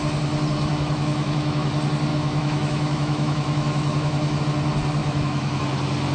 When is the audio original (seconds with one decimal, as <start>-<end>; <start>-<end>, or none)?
0.0-0.7; 1.7-2.1; 4.4-5.0; 5.6-6.1